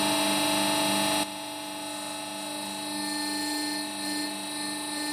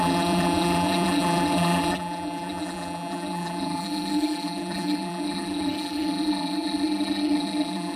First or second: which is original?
first